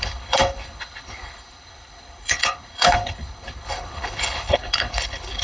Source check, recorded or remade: remade